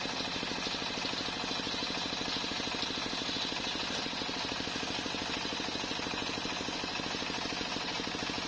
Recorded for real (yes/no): yes